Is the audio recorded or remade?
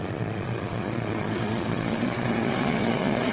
remade